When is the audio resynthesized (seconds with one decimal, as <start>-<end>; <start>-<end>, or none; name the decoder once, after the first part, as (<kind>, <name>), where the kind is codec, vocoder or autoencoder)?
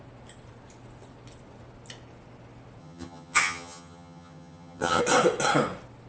2.8-5.0 (vocoder, HiFi-GAN)